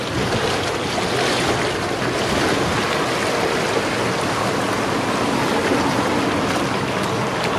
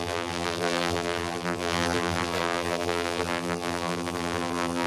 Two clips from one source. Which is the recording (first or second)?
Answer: first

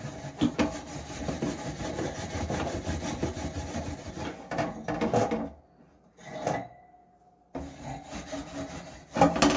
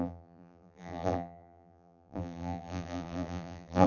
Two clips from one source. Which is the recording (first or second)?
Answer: first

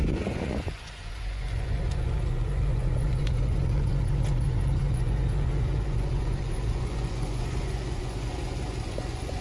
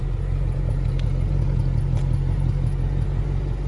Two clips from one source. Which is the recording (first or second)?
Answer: second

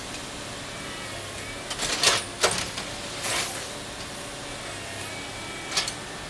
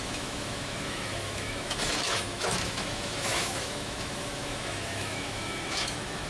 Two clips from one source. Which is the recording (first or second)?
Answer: first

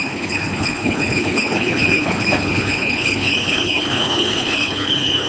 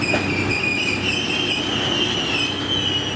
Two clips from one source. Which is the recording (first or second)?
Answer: second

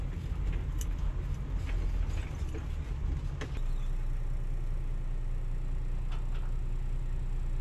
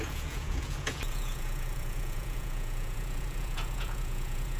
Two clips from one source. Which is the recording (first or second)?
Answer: first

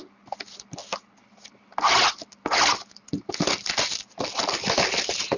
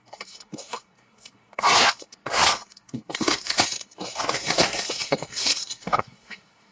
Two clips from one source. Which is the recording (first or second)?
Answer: first